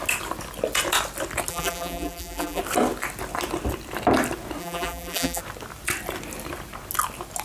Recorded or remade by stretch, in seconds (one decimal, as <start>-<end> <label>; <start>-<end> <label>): 0.0-1.5 recorded; 1.5-2.6 remade; 2.6-4.6 recorded; 4.6-5.4 remade; 5.4-7.4 recorded